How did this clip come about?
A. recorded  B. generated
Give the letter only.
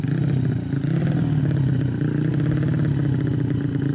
A